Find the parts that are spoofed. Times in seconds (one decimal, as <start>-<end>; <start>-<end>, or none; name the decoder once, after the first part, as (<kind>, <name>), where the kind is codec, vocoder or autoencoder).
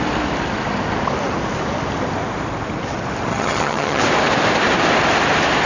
3.3-4.0 (vocoder, HiFi-GAN)